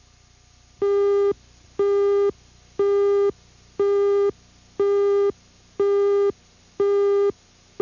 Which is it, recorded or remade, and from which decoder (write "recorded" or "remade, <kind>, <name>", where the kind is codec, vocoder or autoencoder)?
recorded